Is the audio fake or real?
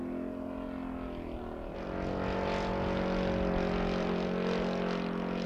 real